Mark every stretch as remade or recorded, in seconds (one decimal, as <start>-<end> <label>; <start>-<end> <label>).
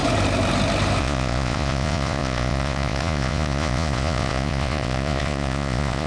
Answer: 0.0-1.0 recorded; 1.0-6.1 remade